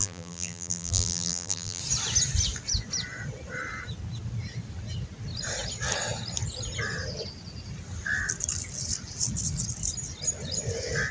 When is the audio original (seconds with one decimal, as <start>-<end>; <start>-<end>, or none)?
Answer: 1.8-11.1